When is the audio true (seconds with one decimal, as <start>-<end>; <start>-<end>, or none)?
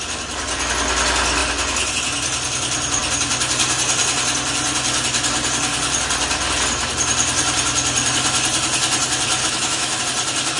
0.0-9.4; 10.0-10.6